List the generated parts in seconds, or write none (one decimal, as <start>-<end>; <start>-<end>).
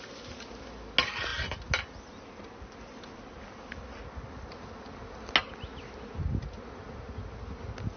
none